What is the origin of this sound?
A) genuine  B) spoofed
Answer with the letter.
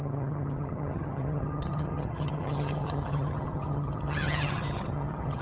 B